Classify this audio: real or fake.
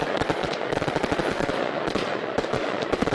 fake